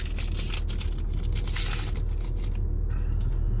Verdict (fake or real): real